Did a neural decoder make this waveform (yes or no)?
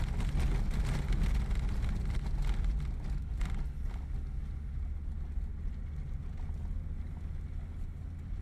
no